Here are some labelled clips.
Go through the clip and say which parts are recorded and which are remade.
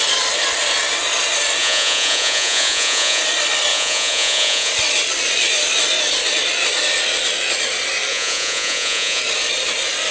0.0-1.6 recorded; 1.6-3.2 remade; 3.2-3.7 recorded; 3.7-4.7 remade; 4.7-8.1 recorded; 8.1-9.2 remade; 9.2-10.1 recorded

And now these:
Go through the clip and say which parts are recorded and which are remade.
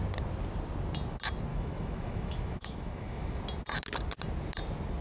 0.0-1.5 recorded; 1.5-3.4 remade; 3.4-5.0 recorded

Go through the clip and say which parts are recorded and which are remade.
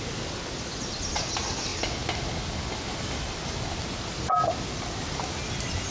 0.0-5.9 recorded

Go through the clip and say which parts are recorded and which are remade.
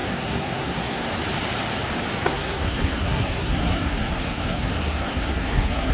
0.0-1.1 remade; 1.1-2.2 recorded; 2.2-5.9 remade